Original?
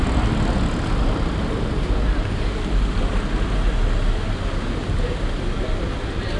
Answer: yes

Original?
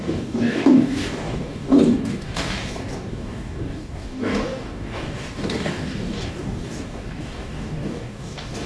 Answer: no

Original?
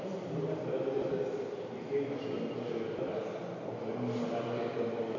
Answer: yes